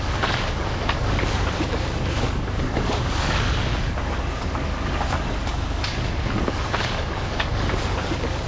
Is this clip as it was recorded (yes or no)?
no